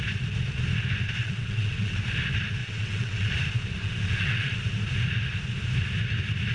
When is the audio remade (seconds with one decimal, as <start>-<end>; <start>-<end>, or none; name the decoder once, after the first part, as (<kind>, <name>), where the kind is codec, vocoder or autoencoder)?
1.2-2.0 (vocoder, WaveNeXt); 2.6-3.3; 3.8-4.6